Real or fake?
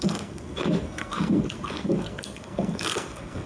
fake